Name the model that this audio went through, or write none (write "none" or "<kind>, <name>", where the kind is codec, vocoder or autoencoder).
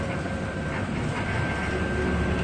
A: none